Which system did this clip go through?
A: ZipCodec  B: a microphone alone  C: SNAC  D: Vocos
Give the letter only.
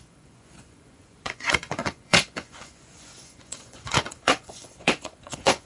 D